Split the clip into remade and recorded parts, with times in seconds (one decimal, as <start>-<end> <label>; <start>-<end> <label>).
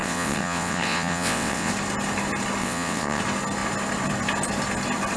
0.0-1.7 remade; 1.7-2.6 recorded; 2.6-3.2 remade; 3.2-5.2 recorded